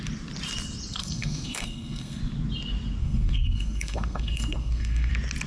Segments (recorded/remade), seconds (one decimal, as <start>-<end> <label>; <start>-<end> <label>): 0.0-1.0 recorded; 1.0-2.2 remade; 2.2-3.0 recorded; 3.0-5.1 remade; 5.1-5.5 recorded